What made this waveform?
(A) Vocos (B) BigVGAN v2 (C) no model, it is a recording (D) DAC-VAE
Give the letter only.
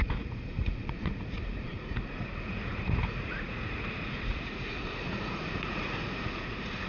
A